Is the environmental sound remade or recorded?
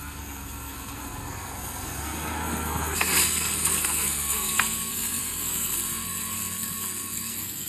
remade